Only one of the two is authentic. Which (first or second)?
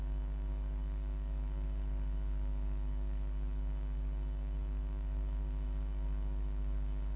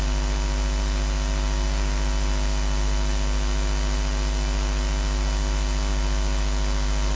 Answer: second